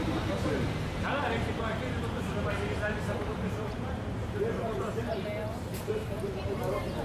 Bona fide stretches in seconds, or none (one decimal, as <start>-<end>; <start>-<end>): 0.0-3.3; 6.5-7.0